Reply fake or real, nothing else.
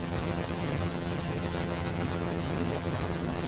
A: fake